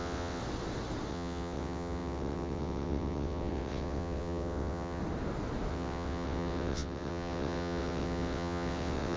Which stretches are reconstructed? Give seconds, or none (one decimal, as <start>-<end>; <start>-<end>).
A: 0.0-0.4; 1.1-5.0; 5.7-9.2

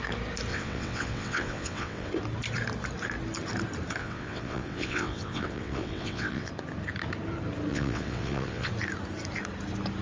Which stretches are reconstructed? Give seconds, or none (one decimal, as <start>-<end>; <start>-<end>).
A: 0.5-2.1; 4.0-6.5; 7.7-8.7

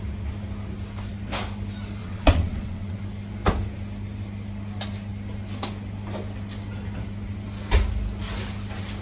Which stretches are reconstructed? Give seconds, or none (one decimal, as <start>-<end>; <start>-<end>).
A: 2.0-3.0

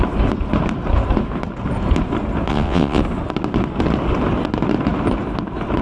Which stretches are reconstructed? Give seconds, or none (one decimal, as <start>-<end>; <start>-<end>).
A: 2.5-3.0

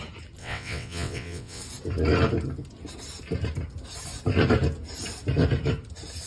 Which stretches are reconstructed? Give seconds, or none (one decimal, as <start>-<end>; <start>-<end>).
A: 0.4-1.6